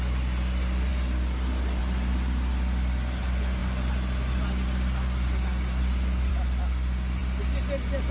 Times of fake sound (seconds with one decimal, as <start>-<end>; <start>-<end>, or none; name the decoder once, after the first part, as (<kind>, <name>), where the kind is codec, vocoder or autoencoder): none